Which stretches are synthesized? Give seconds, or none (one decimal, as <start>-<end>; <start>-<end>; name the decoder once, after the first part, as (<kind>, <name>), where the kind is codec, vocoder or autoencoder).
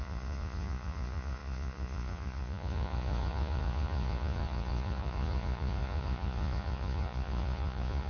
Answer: 0.0-8.1 (vocoder, Vocos)